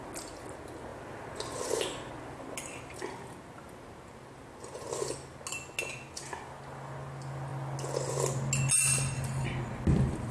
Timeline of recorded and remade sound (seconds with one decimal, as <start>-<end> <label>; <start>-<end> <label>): 0.0-10.3 recorded